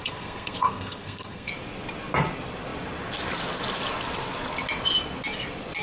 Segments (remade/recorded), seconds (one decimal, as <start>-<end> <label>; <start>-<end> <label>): 0.0-1.5 remade; 1.5-5.8 recorded